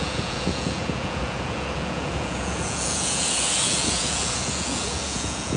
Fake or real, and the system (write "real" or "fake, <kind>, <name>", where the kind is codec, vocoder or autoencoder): fake, vocoder, Vocos